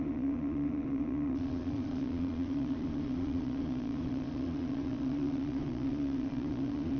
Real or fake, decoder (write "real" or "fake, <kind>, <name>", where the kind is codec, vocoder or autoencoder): fake, vocoder, Vocos